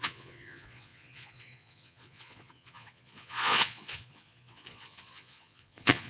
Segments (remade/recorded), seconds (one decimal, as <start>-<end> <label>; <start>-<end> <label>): 0.0-6.1 remade